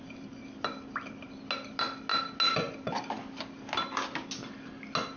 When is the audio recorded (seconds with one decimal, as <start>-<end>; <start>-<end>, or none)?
0.0-5.2